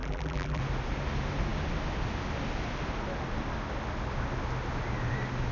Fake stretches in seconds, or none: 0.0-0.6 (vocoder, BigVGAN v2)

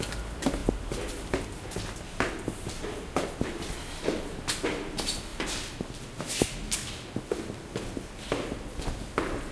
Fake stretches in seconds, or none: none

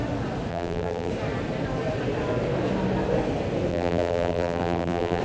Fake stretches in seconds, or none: 0.5-1.1 (vocoder, BigVGAN v2); 3.7-5.2